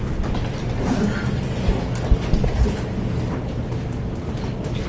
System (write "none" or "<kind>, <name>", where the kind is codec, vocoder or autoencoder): none